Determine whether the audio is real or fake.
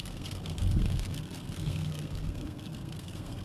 fake